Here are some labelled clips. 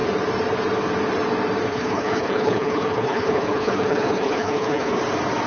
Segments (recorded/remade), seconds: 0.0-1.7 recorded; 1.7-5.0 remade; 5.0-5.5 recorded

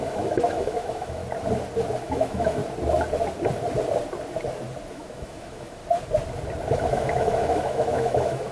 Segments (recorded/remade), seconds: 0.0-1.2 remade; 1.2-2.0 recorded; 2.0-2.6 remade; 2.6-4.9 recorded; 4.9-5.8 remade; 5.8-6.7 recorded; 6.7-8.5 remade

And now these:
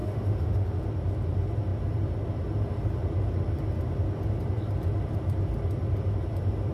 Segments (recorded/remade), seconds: 0.0-0.8 remade; 0.8-6.7 recorded

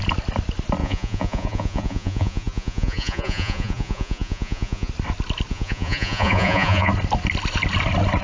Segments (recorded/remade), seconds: 0.0-0.8 recorded; 0.8-4.9 remade; 4.9-5.5 recorded; 5.5-6.9 remade; 6.9-8.2 recorded